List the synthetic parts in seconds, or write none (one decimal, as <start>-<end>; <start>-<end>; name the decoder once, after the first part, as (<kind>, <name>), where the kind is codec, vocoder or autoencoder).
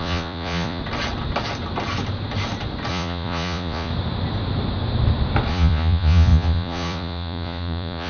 0.0-0.8 (vocoder, Vocos); 2.9-3.9; 5.5-8.1